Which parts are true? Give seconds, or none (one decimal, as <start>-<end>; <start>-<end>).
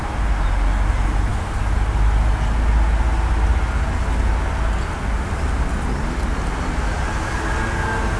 0.0-8.2